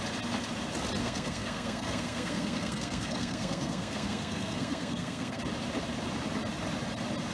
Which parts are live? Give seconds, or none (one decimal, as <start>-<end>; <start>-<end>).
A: 0.0-1.0; 5.4-7.3